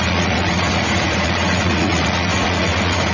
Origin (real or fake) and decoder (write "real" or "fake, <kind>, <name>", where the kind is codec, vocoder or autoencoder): fake, vocoder, Vocos